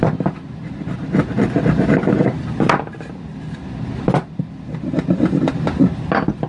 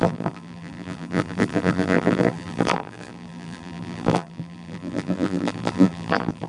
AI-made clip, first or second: second